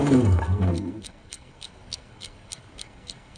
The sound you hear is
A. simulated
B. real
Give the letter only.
A